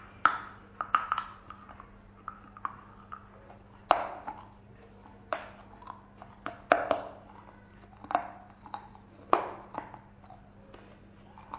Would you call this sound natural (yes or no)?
yes